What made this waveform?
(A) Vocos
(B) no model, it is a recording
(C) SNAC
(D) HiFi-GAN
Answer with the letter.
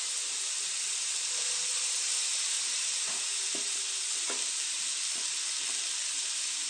B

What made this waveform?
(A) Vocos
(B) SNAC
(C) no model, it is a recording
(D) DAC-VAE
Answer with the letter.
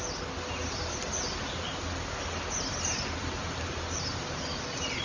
C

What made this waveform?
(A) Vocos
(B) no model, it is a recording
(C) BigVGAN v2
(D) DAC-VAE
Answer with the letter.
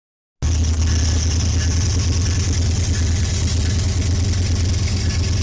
B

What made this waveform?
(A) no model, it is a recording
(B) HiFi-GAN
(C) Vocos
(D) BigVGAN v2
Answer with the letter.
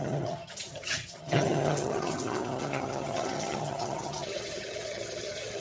B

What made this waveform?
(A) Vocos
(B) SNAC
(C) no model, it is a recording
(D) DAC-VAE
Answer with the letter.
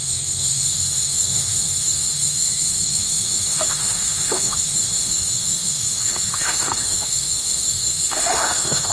D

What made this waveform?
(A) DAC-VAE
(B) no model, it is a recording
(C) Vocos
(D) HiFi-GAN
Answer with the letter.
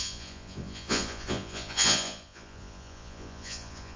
C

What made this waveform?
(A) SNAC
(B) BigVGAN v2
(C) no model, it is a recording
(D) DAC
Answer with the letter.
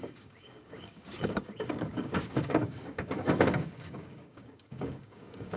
D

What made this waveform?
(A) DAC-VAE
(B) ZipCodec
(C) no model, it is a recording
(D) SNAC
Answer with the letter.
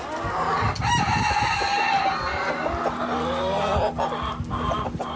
C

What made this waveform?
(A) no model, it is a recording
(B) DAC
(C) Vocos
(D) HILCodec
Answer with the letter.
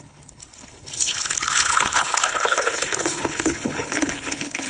D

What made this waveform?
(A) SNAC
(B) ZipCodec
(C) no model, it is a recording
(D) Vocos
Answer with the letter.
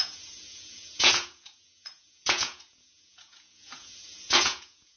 D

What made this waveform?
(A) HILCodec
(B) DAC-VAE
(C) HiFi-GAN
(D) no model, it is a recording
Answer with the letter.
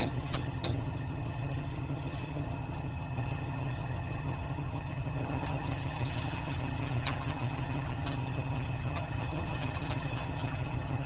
C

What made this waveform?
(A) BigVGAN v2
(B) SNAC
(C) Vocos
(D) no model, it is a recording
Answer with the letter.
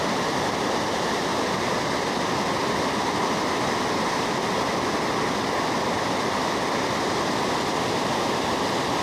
D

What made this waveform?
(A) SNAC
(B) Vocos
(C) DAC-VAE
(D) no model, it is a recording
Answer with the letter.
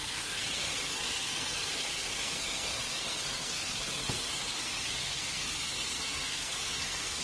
A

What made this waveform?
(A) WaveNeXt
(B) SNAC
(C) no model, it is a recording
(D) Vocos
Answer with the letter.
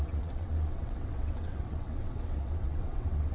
A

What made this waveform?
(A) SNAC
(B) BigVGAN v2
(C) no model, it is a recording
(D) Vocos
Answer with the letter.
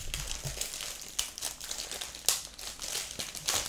C